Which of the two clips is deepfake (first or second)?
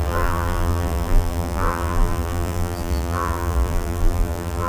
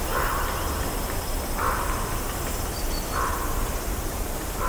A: first